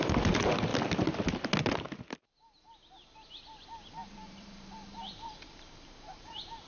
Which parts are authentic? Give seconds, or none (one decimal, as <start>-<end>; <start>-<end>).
0.7-4.1